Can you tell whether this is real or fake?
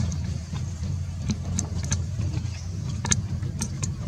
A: fake